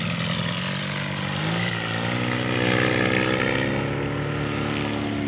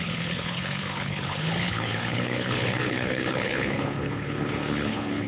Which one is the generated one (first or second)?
second